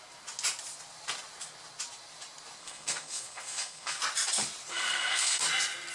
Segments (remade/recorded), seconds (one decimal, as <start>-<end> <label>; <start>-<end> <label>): 0.0-2.6 recorded; 2.6-4.0 remade; 4.0-4.7 recorded; 4.7-5.4 remade; 5.4-5.9 recorded